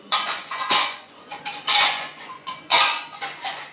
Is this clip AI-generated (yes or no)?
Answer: yes